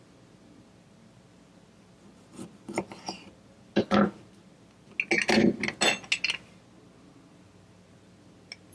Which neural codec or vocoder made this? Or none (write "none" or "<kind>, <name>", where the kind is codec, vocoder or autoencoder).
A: none